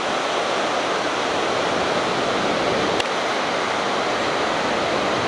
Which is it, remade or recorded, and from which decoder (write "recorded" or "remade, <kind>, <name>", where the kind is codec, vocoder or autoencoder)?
recorded